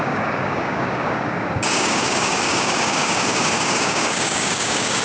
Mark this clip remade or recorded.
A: remade